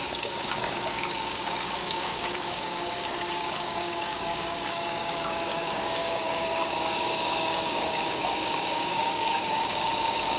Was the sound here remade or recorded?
remade